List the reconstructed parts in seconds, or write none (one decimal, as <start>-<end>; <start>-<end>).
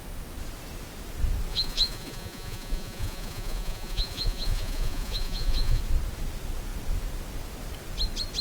1.5-5.8